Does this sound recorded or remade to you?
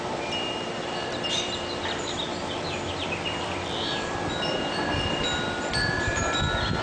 remade